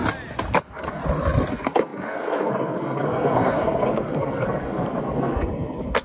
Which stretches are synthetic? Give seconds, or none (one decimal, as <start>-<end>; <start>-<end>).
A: 0.6-1.0; 1.5-6.0

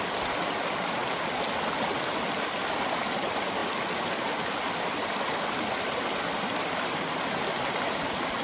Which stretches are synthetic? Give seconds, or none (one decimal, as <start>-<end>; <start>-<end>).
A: none

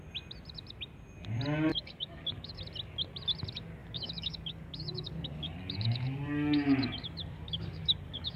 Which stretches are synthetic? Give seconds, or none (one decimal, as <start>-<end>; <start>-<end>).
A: 1.7-2.6; 3.8-8.4

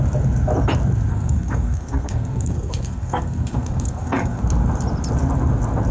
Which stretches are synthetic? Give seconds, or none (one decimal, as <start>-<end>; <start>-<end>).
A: 1.1-4.4

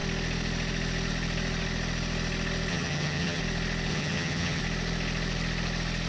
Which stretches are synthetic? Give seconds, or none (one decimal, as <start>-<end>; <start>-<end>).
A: 2.7-3.4; 3.9-4.6

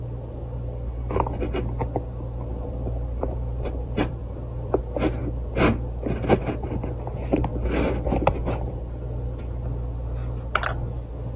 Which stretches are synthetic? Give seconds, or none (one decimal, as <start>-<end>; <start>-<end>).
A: 2.5-4.8; 7.5-9.4

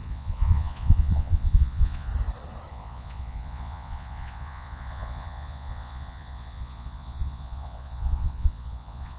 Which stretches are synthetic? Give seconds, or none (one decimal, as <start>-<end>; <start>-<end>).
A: 0.0-2.1; 2.7-9.2